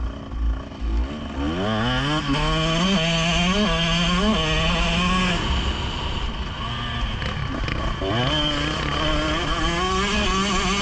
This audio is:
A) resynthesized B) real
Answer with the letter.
B